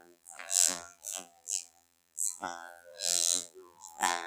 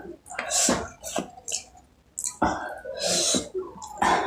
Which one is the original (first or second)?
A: second